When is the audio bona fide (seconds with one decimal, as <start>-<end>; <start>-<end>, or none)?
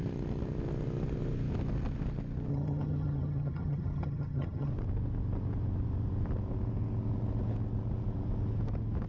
0.0-2.5; 4.7-9.1